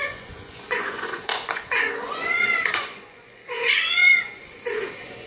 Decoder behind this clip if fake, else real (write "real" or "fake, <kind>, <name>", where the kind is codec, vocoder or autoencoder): fake, vocoder, Vocos